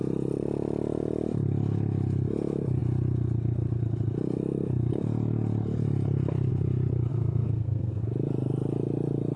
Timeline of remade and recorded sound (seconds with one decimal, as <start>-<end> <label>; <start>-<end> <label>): 0.0-7.1 recorded; 7.1-8.0 remade; 8.0-9.4 recorded